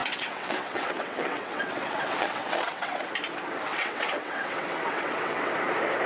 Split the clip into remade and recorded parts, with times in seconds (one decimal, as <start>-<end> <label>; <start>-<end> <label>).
0.0-3.1 remade; 3.1-3.7 recorded; 3.7-5.5 remade; 5.5-6.1 recorded